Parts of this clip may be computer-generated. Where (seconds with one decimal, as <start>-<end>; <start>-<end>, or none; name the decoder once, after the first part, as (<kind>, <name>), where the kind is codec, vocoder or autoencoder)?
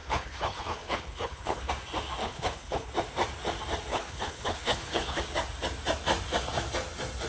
0.0-1.7 (codec, HILCodec); 2.2-2.9; 3.9-5.2